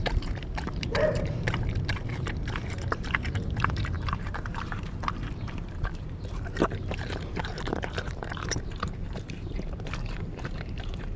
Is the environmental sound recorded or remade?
remade